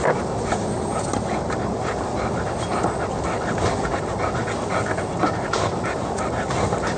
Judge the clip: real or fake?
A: real